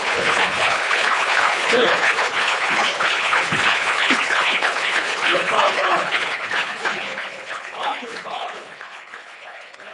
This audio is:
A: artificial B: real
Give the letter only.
A